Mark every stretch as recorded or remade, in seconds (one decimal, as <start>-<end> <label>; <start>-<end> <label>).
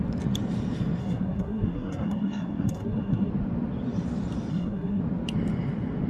0.0-1.0 recorded; 1.0-3.3 remade; 3.3-4.5 recorded; 4.5-5.0 remade; 5.0-6.1 recorded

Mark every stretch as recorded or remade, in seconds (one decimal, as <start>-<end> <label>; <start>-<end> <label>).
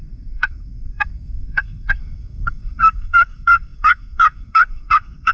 0.0-5.3 remade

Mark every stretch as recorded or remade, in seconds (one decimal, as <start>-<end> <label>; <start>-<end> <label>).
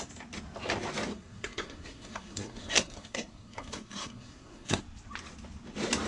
0.0-1.1 recorded; 1.1-4.8 remade; 4.8-6.1 recorded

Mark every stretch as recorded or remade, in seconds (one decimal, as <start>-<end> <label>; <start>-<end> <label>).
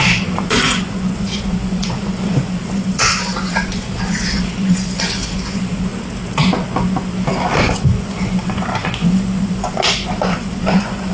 0.0-5.9 remade; 5.9-7.6 recorded; 7.6-11.1 remade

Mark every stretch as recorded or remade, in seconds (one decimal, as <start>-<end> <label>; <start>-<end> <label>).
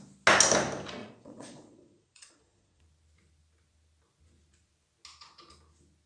0.0-1.0 recorded; 1.0-2.8 remade; 2.8-6.1 recorded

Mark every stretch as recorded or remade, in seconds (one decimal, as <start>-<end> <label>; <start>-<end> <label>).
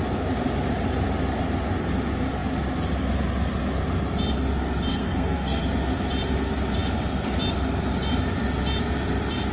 0.0-4.9 recorded; 4.9-5.6 remade; 5.6-9.5 recorded